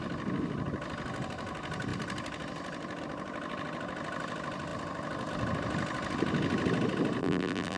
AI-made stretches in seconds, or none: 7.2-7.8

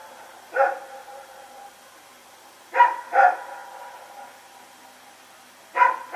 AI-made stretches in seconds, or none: none

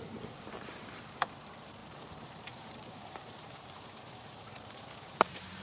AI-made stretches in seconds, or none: 1.8-5.6